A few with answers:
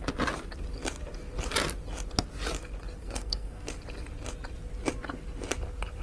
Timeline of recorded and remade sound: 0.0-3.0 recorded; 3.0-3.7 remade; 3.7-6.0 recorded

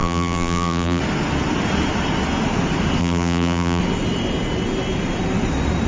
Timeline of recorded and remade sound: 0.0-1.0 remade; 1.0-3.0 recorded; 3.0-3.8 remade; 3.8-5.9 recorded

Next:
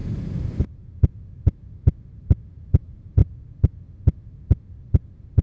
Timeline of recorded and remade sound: 0.0-3.2 remade; 3.2-5.4 recorded

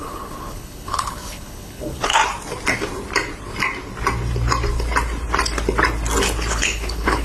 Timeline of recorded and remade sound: 0.0-2.2 remade; 2.2-6.5 recorded; 6.5-7.2 remade

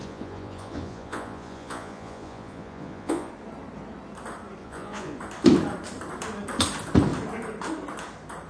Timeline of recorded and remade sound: 0.0-3.3 remade; 3.3-4.6 recorded; 4.6-5.2 remade; 5.2-8.5 recorded

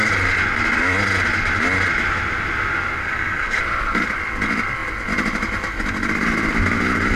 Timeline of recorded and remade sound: 0.0-3.0 recorded; 3.0-3.6 remade; 3.6-7.2 recorded

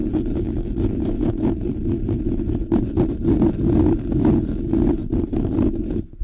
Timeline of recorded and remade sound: 0.0-6.2 recorded